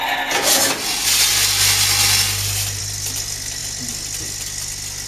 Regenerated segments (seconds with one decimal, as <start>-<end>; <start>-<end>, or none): none